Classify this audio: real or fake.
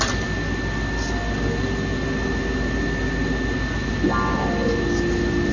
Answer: real